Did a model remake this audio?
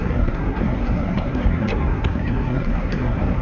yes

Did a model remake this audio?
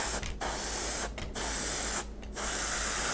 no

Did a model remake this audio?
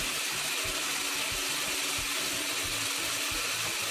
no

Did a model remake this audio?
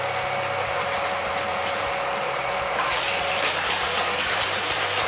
no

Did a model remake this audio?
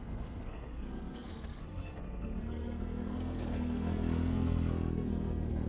yes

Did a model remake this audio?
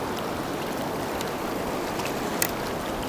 no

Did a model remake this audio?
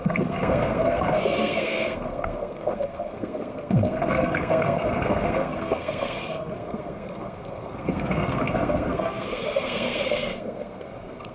yes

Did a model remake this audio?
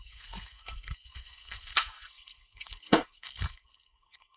yes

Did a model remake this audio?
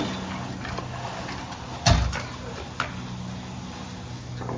no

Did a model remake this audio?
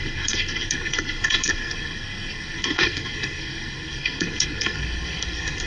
yes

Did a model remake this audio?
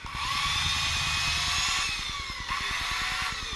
no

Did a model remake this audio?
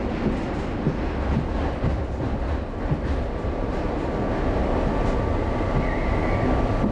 no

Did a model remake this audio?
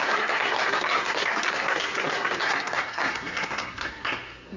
yes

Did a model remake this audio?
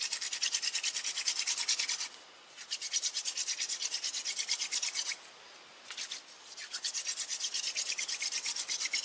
no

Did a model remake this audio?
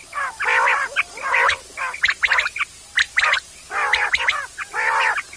no